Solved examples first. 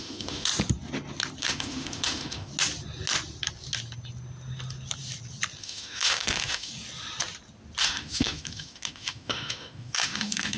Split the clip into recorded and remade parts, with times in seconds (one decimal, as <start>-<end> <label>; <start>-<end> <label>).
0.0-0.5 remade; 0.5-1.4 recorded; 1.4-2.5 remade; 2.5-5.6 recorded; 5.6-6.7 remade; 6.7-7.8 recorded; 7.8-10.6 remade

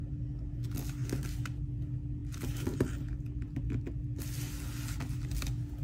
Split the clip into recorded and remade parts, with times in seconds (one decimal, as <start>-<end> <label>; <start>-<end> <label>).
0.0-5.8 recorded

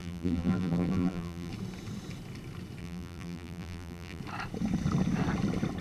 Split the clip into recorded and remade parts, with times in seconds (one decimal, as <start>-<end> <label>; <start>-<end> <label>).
0.0-1.5 remade; 1.5-2.8 recorded; 2.8-4.2 remade; 4.2-5.8 recorded

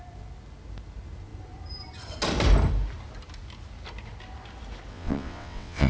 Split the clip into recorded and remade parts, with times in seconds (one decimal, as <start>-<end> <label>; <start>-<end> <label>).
0.0-4.9 recorded; 4.9-5.9 remade

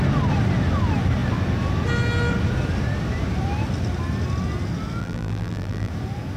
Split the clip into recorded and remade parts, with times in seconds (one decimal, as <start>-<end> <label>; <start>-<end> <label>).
0.0-5.0 recorded; 5.0-5.9 remade; 5.9-6.4 recorded